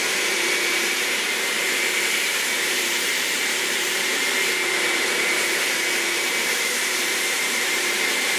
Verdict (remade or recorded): remade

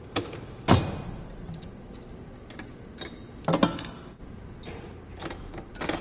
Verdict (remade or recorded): recorded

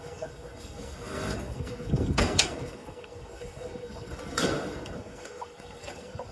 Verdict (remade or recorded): remade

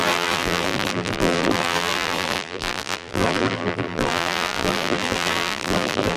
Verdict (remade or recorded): remade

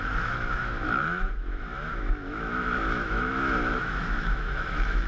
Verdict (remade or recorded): remade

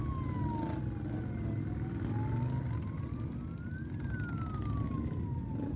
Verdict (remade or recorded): recorded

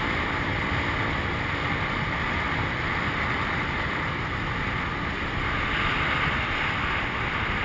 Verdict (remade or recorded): recorded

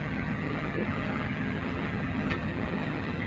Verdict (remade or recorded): remade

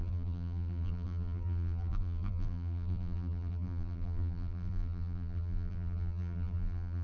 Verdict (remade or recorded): remade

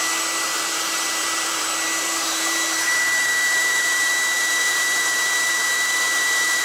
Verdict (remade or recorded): remade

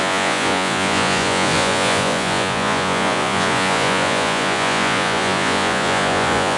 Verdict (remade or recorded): remade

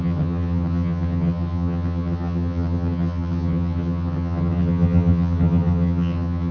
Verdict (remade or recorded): remade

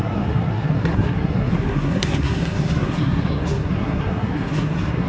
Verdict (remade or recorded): remade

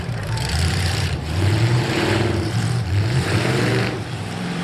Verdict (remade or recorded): remade